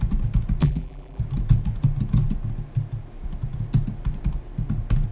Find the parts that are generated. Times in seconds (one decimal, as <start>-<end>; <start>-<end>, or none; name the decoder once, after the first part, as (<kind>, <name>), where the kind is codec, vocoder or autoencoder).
0.6-1.2 (vocoder, BigVGAN v2)